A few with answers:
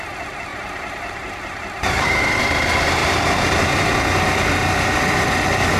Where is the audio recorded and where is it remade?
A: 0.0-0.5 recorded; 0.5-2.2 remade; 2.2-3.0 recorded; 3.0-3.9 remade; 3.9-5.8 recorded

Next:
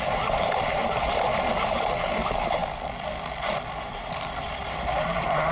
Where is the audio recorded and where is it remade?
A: 0.0-2.6 remade; 2.6-3.8 recorded; 3.8-5.5 remade